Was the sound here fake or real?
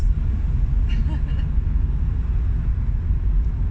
real